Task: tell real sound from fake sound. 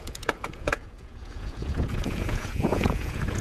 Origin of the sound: fake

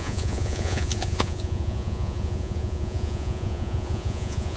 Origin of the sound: fake